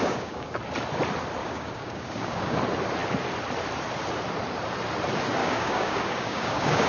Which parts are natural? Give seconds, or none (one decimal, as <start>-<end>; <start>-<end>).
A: 0.6-1.4; 2.6-5.4